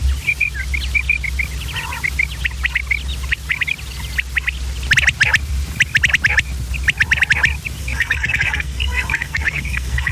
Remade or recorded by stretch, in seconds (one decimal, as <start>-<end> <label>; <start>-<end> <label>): 0.0-7.8 recorded; 7.8-10.1 remade